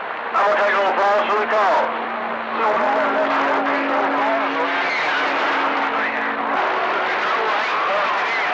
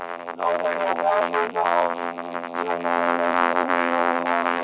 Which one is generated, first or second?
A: second